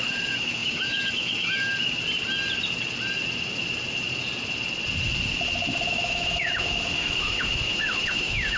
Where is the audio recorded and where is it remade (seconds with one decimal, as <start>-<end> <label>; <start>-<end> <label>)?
0.0-2.0 remade; 2.0-5.9 recorded; 5.9-8.6 remade